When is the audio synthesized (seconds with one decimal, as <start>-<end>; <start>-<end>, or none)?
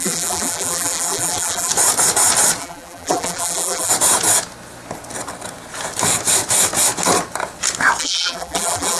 0.0-1.7; 2.6-3.9; 8.0-9.0